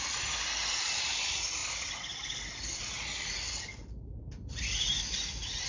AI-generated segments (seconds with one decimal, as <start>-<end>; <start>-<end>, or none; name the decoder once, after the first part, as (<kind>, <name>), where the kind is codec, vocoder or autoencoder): none